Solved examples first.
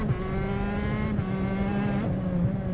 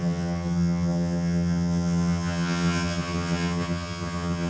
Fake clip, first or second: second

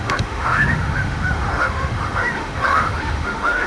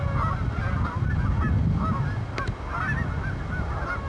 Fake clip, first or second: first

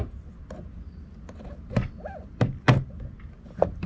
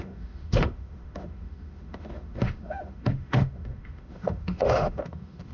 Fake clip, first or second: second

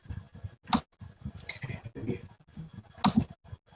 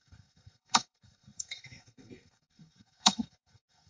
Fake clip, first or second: second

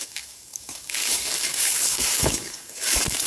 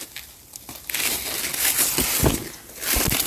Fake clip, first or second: first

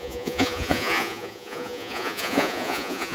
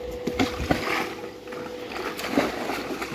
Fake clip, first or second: first